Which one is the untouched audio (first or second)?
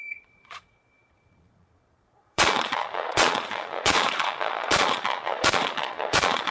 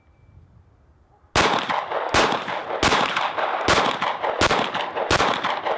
second